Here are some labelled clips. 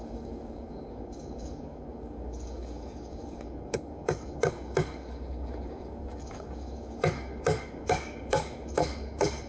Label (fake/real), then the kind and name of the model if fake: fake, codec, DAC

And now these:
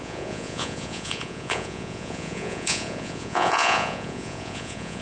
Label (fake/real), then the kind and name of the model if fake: fake, vocoder, Vocos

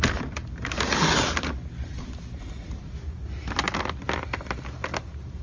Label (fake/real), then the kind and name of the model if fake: real